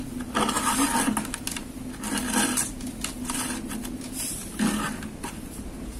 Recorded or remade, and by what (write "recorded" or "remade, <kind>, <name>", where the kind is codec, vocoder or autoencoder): recorded